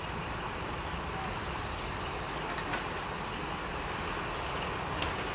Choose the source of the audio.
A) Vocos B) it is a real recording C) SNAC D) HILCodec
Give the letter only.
B